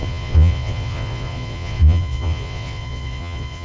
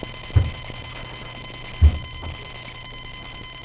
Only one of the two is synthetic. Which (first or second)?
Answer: first